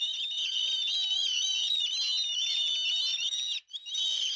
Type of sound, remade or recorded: recorded